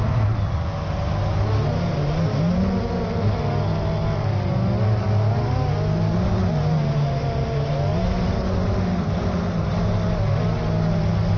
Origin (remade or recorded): recorded